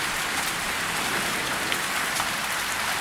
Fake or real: real